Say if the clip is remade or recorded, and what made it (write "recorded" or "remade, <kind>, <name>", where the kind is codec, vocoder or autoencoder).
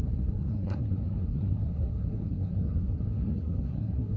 remade, codec, SNAC